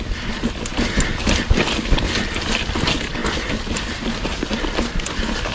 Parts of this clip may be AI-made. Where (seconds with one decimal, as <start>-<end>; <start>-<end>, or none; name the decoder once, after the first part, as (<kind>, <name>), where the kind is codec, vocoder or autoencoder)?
none